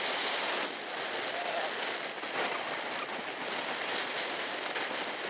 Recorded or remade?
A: recorded